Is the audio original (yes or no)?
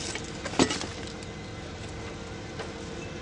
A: yes